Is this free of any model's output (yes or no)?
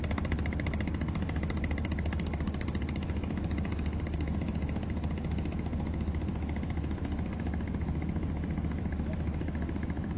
yes